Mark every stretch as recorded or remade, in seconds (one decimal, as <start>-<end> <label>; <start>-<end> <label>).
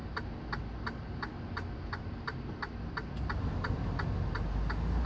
0.0-5.1 recorded